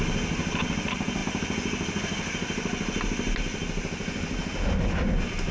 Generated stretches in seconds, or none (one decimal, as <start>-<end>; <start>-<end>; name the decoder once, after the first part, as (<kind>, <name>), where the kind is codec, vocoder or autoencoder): none